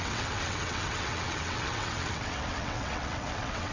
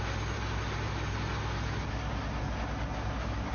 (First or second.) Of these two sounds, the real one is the second